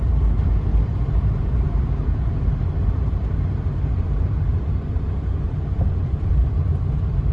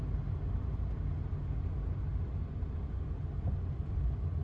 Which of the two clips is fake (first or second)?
first